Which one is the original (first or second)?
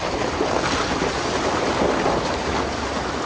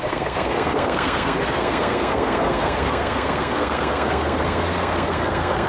first